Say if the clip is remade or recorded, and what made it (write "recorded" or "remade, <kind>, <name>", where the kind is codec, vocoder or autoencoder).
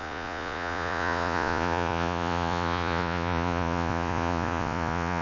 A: remade, vocoder, Vocos